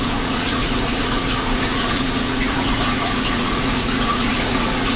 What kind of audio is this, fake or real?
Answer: fake